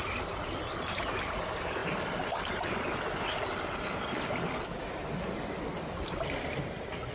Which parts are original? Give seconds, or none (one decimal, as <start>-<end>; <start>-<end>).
0.0-7.1